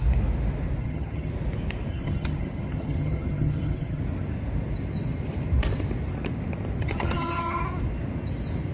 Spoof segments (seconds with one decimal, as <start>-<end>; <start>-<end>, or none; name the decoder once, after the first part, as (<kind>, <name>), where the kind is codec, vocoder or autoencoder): 0.8-1.3 (vocoder, HiFi-GAN); 1.9-4.0; 6.8-7.6